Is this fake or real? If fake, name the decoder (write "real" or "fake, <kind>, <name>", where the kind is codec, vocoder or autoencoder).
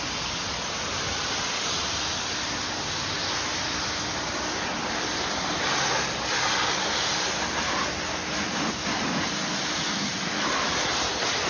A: real